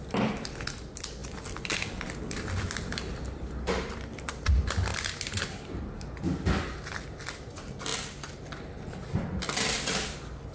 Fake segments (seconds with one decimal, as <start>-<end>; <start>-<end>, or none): 0.0-4.9; 6.0-7.9; 9.0-10.5